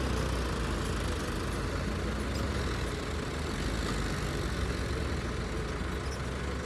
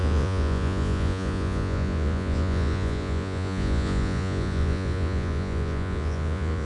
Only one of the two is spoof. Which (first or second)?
second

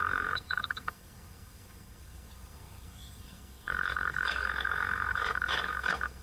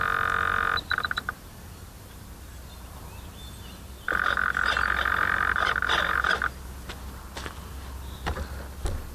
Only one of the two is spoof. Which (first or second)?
first